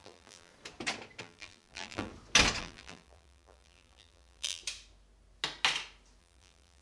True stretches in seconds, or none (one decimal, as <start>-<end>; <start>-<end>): 0.5-1.2; 2.1-2.6; 4.6-6.2